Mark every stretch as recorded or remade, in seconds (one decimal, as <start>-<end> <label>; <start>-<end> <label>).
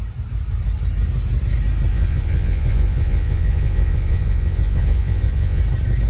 0.0-1.9 recorded; 1.9-5.6 remade; 5.6-6.1 recorded